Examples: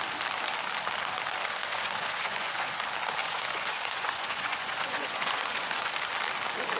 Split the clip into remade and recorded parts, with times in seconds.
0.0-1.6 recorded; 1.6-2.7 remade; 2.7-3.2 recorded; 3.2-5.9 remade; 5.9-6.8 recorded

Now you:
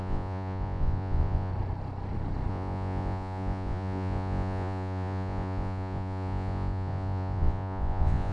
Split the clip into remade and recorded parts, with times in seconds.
0.0-1.5 remade; 1.5-2.5 recorded; 2.5-8.3 remade

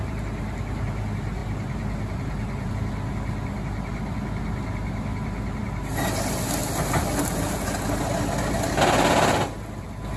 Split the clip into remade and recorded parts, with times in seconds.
0.0-10.2 recorded

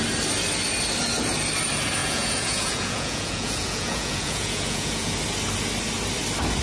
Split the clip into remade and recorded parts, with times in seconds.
0.0-2.0 recorded; 2.0-5.1 remade; 5.1-6.6 recorded

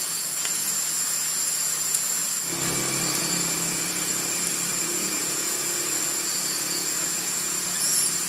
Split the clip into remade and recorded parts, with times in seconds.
0.0-2.2 remade; 2.2-3.2 recorded; 3.2-4.1 remade; 4.1-4.8 recorded; 4.8-8.3 remade